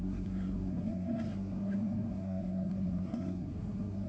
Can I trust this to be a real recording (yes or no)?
no